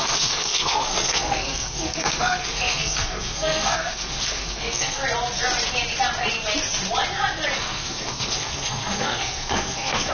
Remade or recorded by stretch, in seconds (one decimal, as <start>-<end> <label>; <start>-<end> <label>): 0.0-5.0 remade; 5.0-7.6 recorded; 7.6-10.1 remade